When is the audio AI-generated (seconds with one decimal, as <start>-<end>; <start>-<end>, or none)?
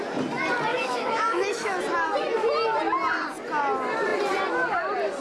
0.7-1.8